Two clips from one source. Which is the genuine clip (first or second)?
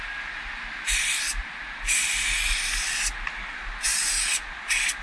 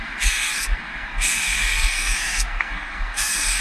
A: first